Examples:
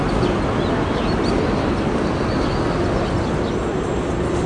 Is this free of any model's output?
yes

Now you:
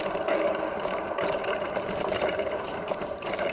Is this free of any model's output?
no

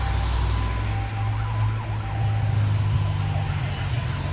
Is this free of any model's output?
yes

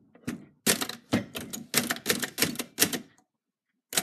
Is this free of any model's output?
yes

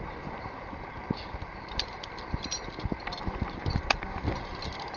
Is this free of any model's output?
yes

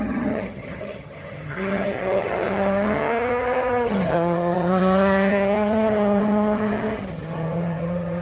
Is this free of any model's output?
no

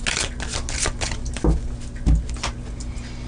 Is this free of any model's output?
yes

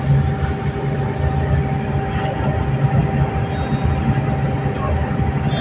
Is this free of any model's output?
yes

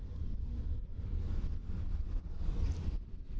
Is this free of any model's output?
yes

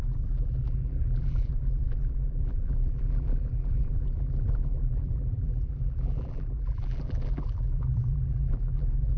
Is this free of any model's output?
no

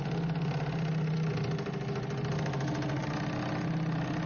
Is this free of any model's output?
yes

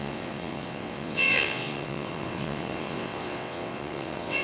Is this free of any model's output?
no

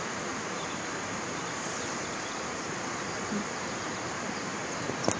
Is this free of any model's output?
no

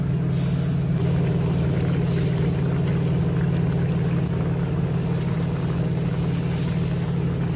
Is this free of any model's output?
yes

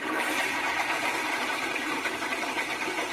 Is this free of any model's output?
no